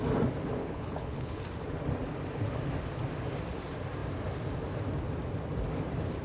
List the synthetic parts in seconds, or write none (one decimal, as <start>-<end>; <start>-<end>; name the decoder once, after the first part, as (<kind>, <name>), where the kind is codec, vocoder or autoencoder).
0.6-1.4 (codec, HILCodec)